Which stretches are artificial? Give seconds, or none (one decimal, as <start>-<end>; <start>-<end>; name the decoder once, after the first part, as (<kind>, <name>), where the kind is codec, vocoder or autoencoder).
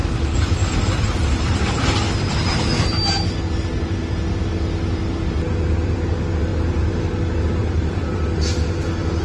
0.0-1.6 (vocoder, BigVGAN v2); 6.5-7.0; 7.6-8.1